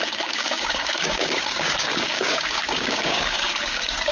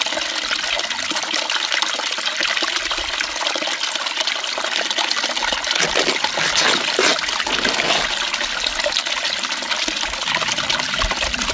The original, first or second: second